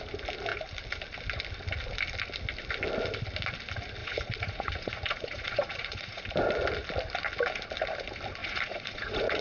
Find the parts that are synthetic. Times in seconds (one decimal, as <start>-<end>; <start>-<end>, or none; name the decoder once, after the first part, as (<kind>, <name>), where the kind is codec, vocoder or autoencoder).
4.0-6.2 (vocoder, Vocos); 8.4-9.4